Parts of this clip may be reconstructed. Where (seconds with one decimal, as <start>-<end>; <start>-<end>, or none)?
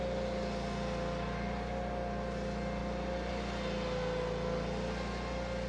none